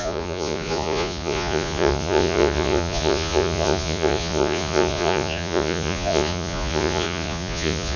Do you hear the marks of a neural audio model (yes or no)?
yes